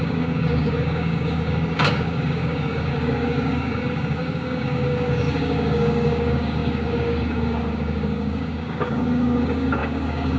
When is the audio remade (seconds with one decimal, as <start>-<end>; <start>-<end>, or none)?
0.0-10.4